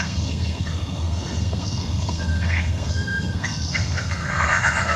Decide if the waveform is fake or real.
fake